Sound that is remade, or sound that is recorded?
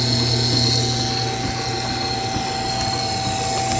recorded